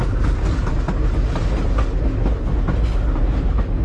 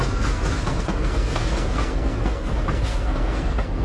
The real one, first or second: first